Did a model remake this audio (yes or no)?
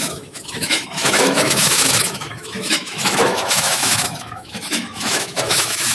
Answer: yes